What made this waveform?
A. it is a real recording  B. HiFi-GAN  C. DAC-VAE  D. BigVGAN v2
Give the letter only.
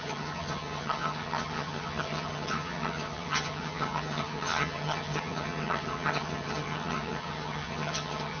B